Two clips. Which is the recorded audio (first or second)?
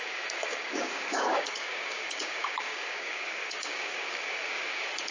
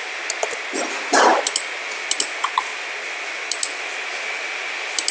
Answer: second